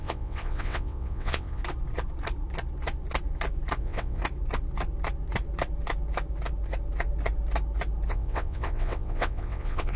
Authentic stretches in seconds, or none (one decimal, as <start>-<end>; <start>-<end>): 1.6-3.8; 4.2-8.1